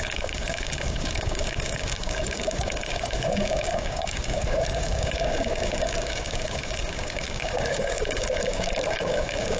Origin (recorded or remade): remade